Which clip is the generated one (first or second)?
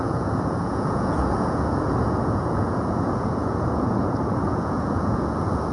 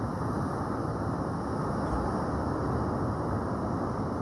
first